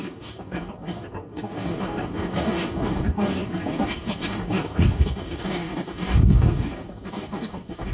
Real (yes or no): no